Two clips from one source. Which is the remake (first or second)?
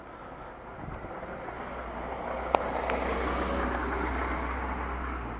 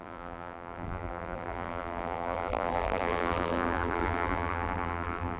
second